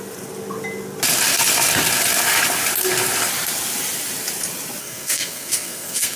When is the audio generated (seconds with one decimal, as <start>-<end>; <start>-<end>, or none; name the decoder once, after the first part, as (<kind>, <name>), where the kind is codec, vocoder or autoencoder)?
4.8-6.2 (codec, SNAC)